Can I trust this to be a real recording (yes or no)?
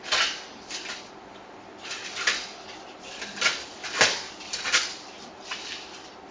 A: yes